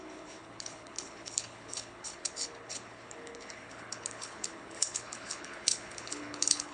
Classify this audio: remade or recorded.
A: remade